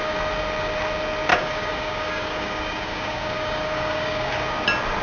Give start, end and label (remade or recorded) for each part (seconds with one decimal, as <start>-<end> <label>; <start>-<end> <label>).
0.0-1.3 recorded; 1.3-4.3 remade; 4.3-5.0 recorded